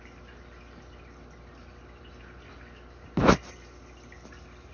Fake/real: real